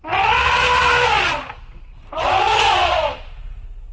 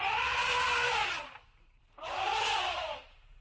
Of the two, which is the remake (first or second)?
second